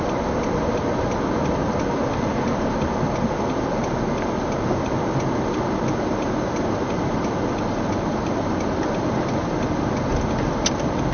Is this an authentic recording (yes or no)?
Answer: yes